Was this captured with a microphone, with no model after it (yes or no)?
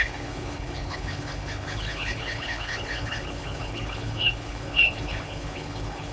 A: no